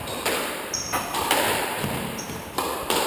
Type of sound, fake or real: fake